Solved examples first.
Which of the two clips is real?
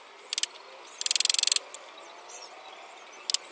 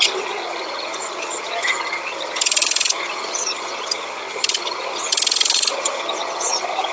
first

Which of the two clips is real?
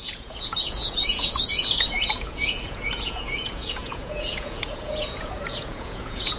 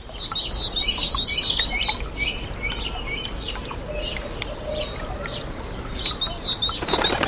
second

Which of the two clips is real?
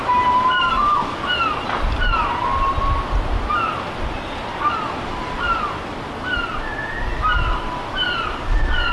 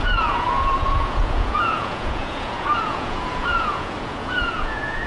first